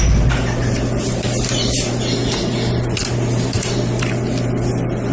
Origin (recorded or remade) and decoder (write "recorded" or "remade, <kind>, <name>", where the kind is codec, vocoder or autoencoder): recorded